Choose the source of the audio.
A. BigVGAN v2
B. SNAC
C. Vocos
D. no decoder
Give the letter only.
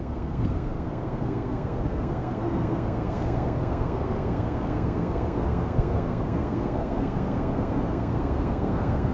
B